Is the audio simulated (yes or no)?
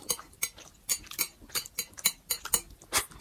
no